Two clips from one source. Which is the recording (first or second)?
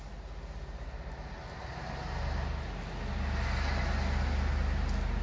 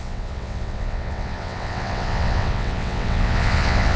first